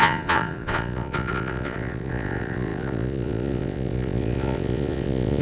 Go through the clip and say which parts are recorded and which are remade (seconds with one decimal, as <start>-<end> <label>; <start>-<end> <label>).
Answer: 0.0-5.4 remade